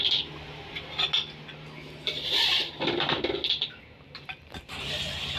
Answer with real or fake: real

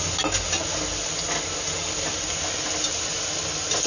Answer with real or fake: real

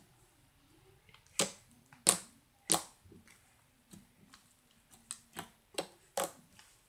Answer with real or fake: real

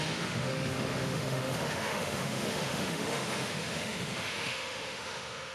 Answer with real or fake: fake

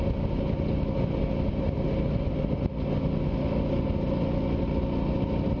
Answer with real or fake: real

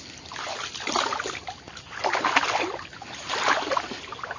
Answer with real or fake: real